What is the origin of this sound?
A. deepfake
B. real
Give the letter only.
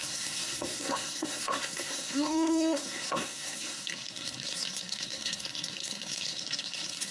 A